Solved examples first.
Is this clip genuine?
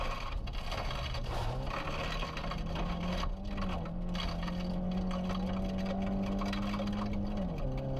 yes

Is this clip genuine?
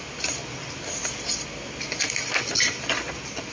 yes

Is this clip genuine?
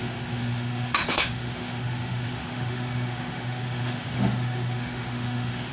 no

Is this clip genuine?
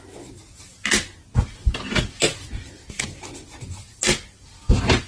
yes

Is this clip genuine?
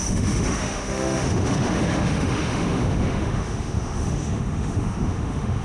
no